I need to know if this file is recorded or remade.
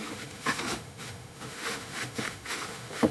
remade